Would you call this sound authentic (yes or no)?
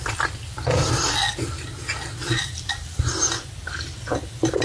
no